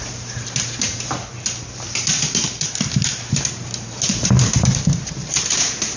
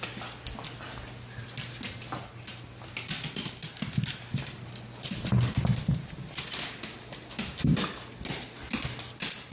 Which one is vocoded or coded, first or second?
first